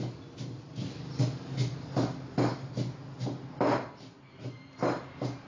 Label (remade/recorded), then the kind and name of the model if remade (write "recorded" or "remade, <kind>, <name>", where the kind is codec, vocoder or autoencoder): recorded